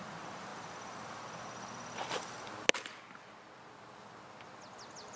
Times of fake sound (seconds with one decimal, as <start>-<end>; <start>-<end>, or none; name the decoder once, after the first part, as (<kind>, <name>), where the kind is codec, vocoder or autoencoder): none